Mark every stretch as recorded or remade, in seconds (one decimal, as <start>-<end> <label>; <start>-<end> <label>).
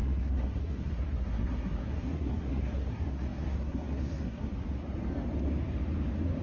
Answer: 0.0-4.5 remade; 4.5-6.4 recorded